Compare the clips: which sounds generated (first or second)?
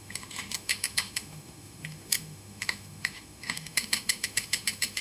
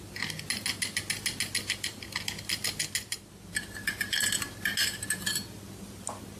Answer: first